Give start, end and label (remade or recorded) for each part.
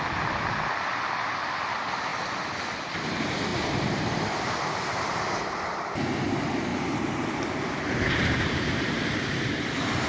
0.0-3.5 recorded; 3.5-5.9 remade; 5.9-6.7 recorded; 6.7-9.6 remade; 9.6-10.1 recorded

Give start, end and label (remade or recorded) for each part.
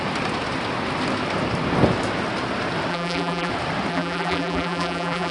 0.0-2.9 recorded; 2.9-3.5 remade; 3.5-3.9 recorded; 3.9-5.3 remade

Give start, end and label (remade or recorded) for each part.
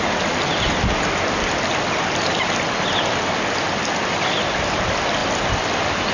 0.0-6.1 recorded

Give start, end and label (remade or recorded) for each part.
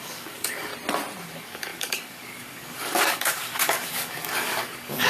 0.0-0.7 remade; 0.7-1.2 recorded; 1.2-5.1 remade